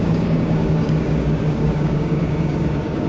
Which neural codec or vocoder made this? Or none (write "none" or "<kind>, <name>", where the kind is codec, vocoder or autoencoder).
codec, DAC